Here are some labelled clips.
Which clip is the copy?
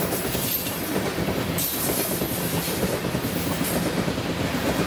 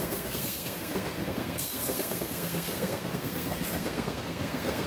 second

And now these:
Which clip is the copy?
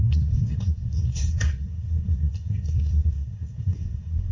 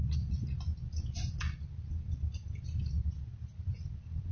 first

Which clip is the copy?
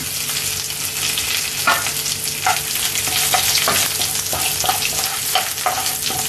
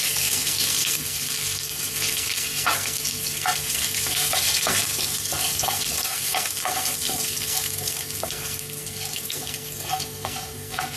second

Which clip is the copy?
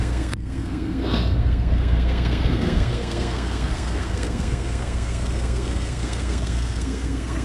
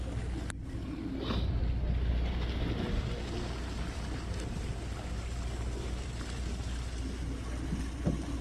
first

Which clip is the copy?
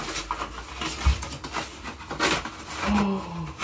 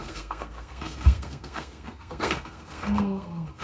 second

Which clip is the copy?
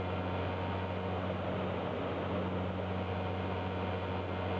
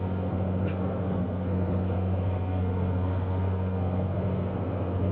second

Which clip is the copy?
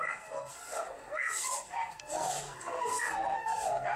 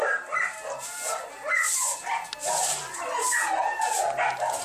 first